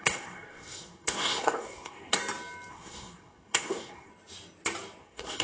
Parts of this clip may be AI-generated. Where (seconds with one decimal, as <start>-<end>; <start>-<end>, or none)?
0.0-2.2; 2.7-4.1; 5.0-5.4